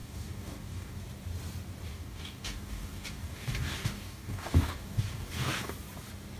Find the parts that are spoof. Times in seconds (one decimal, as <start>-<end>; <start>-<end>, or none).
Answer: 0.0-1.0; 1.9-5.7